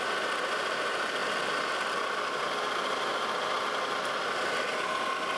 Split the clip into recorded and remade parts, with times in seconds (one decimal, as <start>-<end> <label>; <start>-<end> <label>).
0.0-5.4 recorded